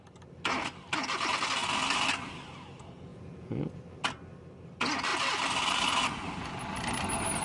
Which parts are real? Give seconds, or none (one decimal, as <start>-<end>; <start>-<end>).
0.0-3.1; 3.7-7.4